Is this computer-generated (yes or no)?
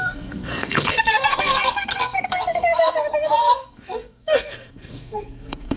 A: yes